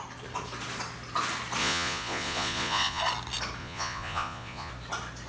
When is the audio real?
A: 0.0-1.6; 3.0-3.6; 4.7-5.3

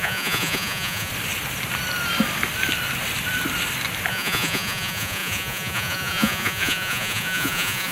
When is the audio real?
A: 1.1-4.1

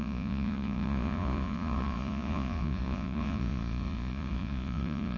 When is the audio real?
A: none

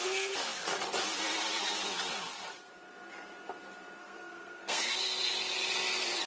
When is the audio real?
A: 0.0-4.0; 4.9-6.3

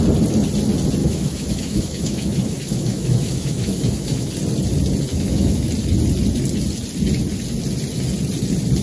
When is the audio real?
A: 0.0-1.0; 4.3-5.1; 5.7-8.8

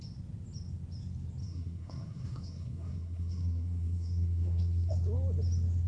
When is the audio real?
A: 0.0-1.4; 4.9-5.9

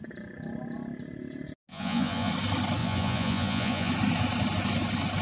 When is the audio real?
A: 0.0-1.7; 2.3-2.8; 3.9-5.2

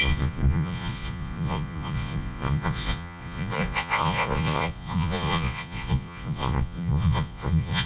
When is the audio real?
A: none